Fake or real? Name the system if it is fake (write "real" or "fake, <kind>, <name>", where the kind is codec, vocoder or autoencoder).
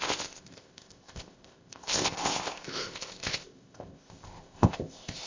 fake, codec, ZipCodec